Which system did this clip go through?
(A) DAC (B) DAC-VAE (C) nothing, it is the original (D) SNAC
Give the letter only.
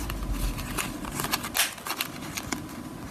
C